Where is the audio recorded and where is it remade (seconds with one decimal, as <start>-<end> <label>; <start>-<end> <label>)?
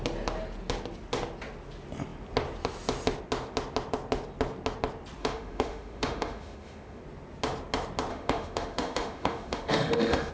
0.0-5.2 recorded; 5.2-7.0 remade; 7.0-8.1 recorded; 8.1-10.3 remade